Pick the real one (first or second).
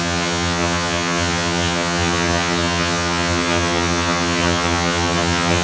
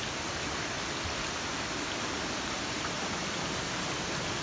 second